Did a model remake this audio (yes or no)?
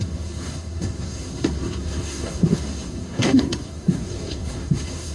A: yes